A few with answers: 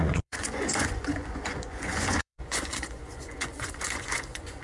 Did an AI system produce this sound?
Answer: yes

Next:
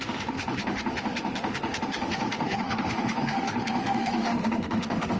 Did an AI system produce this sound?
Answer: yes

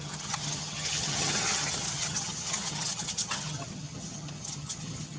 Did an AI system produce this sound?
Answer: yes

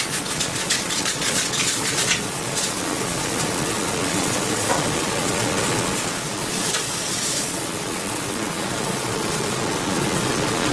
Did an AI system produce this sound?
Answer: yes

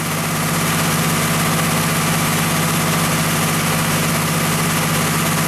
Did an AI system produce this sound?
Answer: no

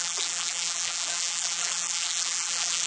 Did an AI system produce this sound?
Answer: yes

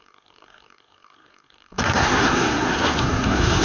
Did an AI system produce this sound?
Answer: yes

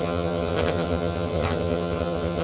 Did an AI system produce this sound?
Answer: yes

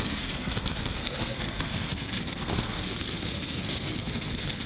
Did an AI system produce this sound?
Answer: yes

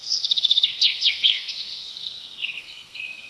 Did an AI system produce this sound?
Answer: yes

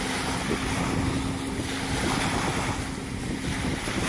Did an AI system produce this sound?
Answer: no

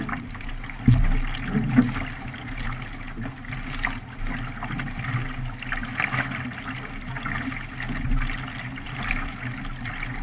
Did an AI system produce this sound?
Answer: no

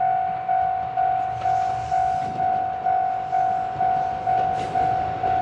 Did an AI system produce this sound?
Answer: no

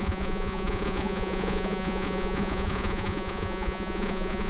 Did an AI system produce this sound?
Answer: yes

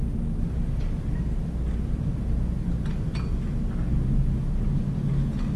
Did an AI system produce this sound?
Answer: no